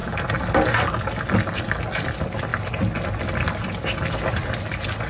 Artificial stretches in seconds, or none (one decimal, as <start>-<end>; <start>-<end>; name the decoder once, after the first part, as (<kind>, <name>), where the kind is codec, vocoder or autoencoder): none